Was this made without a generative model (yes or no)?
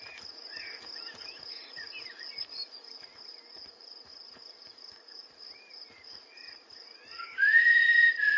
no